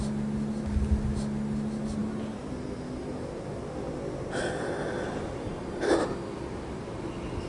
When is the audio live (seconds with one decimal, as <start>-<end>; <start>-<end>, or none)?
0.0-7.5